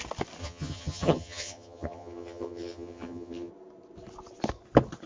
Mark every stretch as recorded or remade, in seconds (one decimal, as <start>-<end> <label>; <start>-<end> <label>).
0.0-0.4 recorded; 0.4-3.5 remade; 3.5-5.1 recorded

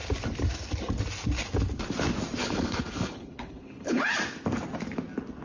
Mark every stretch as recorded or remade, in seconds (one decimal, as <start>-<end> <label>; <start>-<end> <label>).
0.0-2.4 recorded; 2.4-4.0 remade; 4.0-5.4 recorded